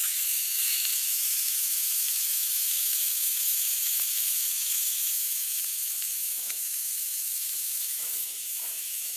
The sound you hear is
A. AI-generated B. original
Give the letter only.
A